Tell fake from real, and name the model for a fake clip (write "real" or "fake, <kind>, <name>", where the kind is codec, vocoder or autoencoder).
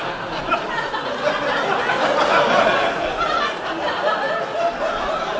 real